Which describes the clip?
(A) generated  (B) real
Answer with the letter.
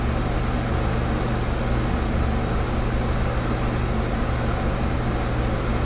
B